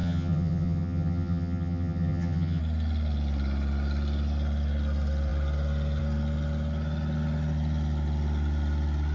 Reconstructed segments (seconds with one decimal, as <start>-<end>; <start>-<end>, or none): 0.0-2.6